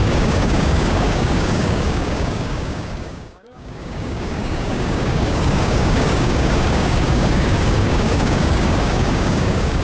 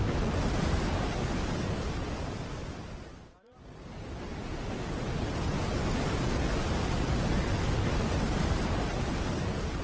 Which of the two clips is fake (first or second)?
first